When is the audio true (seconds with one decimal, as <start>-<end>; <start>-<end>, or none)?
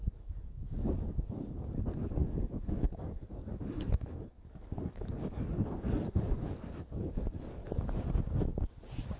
7.6-9.2